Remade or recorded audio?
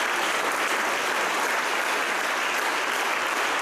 recorded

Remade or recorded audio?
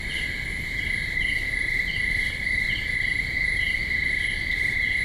recorded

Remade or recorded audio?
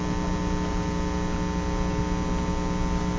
recorded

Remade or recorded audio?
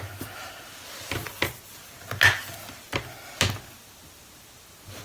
recorded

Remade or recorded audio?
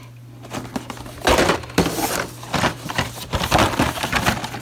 recorded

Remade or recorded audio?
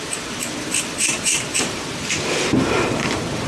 remade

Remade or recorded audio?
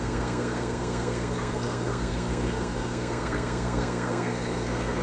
remade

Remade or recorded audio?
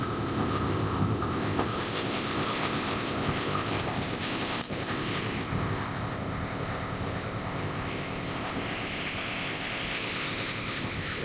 remade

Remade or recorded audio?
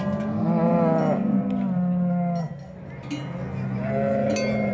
recorded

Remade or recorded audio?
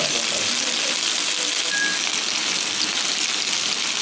recorded